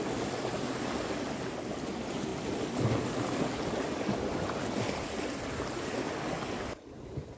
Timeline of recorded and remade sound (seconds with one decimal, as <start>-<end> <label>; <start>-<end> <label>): 0.0-7.4 recorded